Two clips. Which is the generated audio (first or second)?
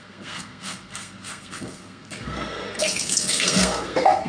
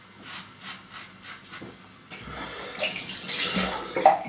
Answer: first